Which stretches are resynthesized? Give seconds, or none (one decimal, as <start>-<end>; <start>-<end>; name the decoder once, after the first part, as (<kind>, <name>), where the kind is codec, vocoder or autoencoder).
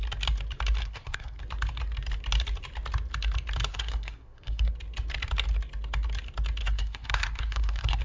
0.8-1.4 (codec, SNAC); 3.7-4.7; 6.6-8.0